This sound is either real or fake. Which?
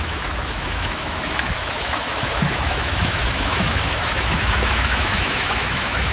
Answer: fake